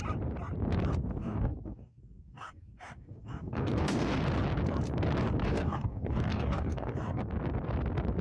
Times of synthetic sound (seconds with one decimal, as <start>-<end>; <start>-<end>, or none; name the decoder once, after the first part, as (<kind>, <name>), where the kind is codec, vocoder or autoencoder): 1.2-4.2 (codec, DAC); 5.4-7.2